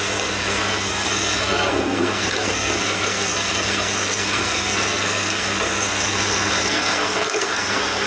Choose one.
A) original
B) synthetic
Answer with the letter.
B